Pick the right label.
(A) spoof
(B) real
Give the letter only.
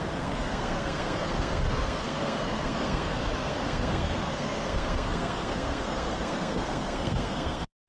A